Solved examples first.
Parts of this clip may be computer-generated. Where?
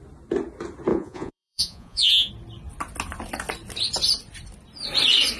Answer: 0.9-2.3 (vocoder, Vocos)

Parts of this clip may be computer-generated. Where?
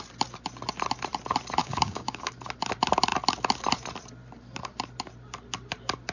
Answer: 1.6-2.3 (codec, DAC)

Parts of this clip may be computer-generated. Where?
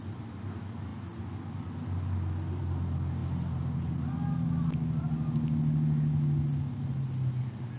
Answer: none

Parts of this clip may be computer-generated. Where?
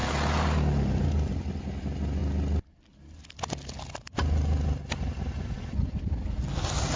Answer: none